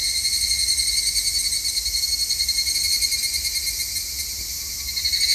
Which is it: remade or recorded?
recorded